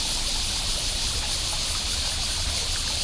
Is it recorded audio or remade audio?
recorded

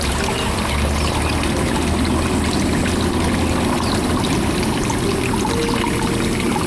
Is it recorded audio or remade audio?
recorded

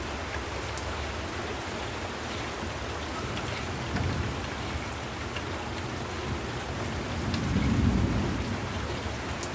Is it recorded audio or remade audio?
recorded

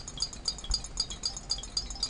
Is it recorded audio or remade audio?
recorded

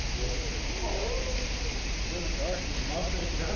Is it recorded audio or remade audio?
recorded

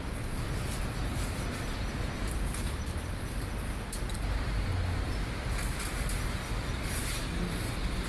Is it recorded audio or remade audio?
recorded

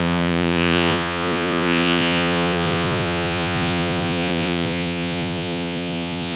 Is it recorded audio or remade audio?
remade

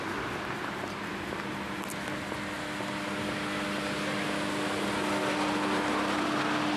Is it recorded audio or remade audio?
recorded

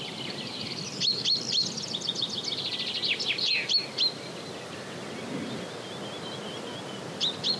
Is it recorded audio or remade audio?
recorded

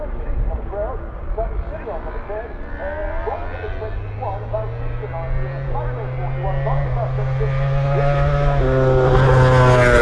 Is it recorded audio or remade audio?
recorded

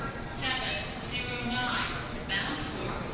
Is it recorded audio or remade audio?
recorded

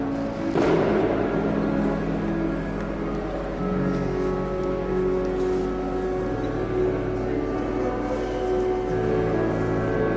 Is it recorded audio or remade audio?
recorded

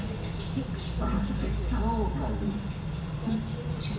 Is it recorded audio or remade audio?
recorded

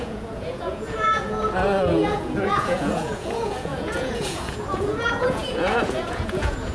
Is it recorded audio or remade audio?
remade